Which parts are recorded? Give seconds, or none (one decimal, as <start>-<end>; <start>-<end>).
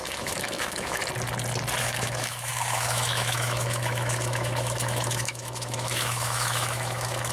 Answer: 1.0-1.8